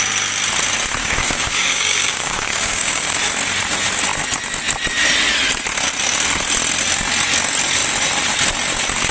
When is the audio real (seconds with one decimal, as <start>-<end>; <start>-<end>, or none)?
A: 0.0-1.0; 3.2-9.1